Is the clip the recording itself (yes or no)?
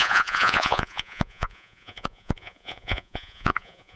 no